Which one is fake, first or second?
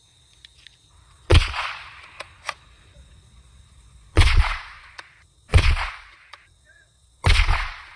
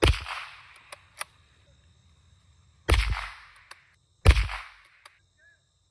first